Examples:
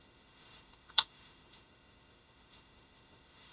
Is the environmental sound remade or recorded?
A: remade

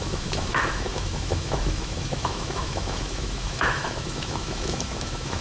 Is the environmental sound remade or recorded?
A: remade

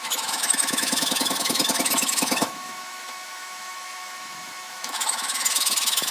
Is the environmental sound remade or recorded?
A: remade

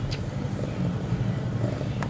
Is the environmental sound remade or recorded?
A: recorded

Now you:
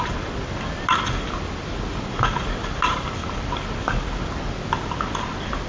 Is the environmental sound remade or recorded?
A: recorded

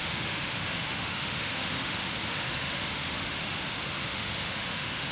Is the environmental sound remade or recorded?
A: remade